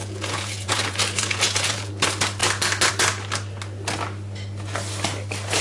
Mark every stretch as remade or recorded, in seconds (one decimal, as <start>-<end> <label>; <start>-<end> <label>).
0.0-1.9 remade; 1.9-5.6 recorded